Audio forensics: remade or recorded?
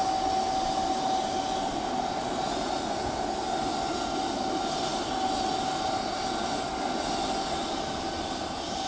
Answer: recorded